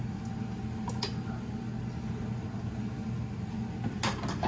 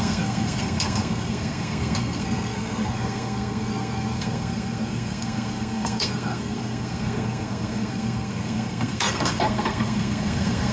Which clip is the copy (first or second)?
second